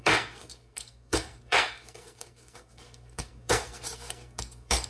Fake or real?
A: fake